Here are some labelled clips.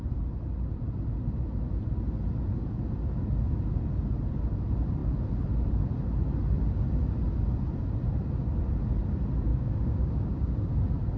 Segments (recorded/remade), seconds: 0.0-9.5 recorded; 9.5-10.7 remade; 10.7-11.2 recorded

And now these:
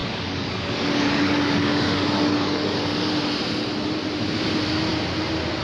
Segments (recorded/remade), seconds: 0.0-3.1 remade; 3.1-5.6 recorded

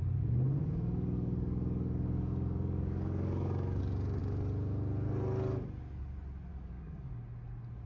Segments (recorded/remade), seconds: 0.0-0.6 recorded; 0.6-3.8 remade; 3.8-6.5 recorded; 6.5-7.1 remade; 7.1-7.9 recorded